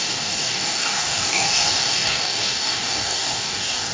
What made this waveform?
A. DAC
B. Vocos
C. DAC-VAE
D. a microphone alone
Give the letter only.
A